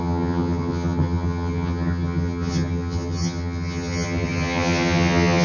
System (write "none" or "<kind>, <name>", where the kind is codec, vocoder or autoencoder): vocoder, HiFi-GAN